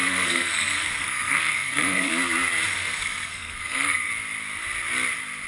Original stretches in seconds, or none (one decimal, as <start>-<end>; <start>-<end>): 2.1-2.7; 4.1-5.5